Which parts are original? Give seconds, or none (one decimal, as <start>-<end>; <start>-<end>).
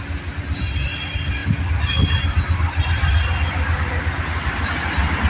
0.0-5.3